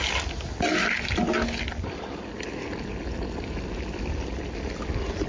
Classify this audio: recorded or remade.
recorded